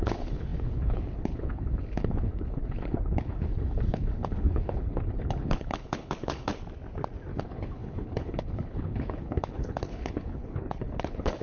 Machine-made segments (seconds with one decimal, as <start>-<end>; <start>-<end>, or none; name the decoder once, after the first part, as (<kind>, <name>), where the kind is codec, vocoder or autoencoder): 0.0-6.5 (codec, HILCodec); 7.3-11.4